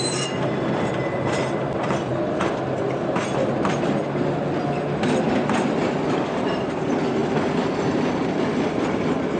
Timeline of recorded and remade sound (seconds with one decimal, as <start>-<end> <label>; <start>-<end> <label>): 0.0-2.1 remade; 2.1-6.5 recorded; 6.5-7.2 remade; 7.2-8.8 recorded; 8.8-9.4 remade